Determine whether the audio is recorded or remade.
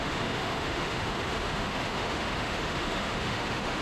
remade